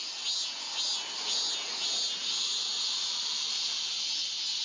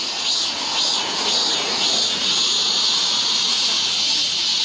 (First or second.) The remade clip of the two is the second